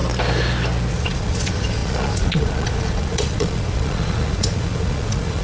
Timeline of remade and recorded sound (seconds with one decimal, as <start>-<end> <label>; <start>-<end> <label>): 0.0-0.9 recorded; 0.9-5.4 remade